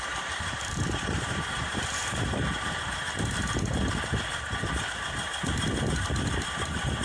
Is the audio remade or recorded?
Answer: remade